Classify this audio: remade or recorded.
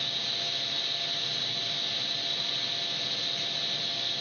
recorded